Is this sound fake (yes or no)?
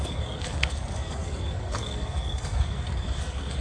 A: yes